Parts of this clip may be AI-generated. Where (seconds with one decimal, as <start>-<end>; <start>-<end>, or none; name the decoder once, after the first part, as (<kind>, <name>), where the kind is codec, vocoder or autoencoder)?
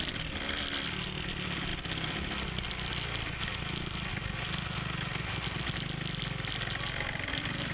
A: none